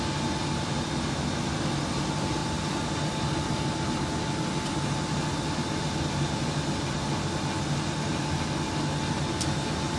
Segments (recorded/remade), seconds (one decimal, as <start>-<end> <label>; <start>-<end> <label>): 0.0-10.0 recorded